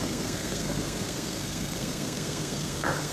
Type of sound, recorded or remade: remade